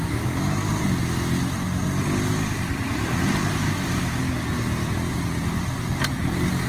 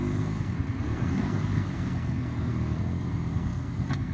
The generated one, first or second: second